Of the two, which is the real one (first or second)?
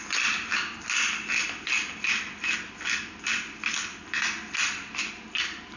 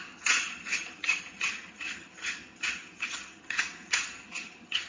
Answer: first